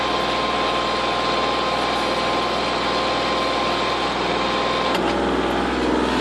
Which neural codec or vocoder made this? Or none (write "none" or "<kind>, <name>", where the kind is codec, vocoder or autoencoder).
none